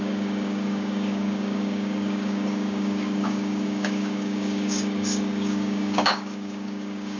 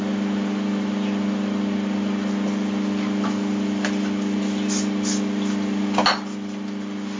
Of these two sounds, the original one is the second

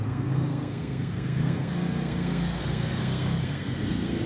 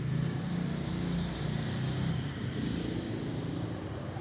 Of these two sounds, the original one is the second